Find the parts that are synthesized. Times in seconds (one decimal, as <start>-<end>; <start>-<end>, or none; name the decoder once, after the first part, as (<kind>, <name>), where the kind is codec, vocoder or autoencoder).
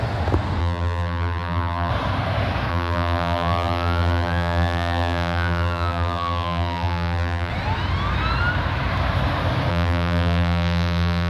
0.6-1.9 (vocoder, BigVGAN v2); 2.7-7.5; 9.7-11.3